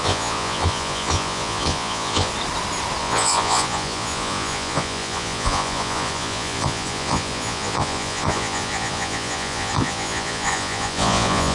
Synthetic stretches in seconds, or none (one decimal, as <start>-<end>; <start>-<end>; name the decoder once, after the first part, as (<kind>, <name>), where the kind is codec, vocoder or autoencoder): 0.0-2.3 (vocoder, Vocos); 3.0-11.5